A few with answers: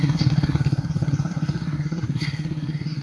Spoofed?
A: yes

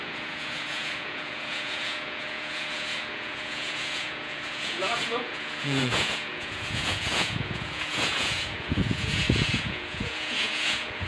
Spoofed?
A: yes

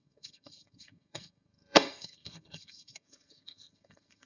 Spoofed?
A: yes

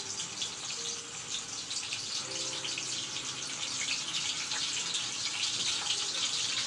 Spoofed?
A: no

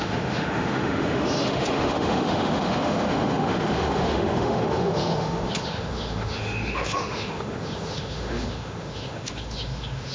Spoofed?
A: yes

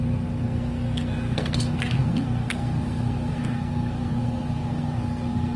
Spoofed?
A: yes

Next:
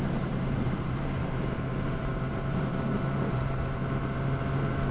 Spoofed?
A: yes